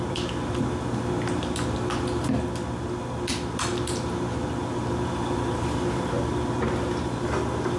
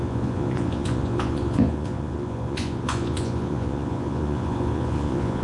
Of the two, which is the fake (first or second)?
second